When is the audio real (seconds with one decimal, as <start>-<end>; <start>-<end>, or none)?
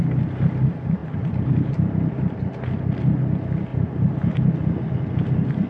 0.0-1.0; 2.4-3.7; 4.3-5.7